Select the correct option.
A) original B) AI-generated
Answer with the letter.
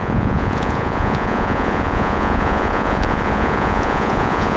B